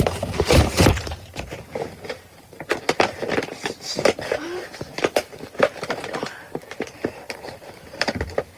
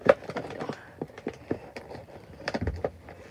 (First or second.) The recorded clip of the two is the second